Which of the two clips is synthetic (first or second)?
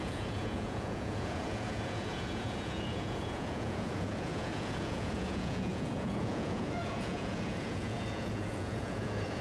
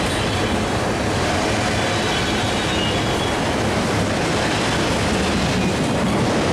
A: first